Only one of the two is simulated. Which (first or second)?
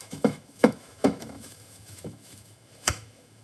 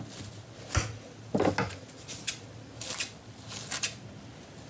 first